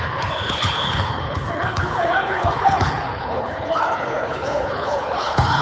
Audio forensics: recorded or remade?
remade